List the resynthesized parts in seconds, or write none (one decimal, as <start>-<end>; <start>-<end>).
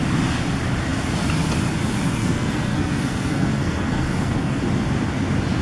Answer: 2.2-4.6